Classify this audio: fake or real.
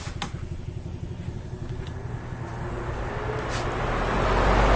real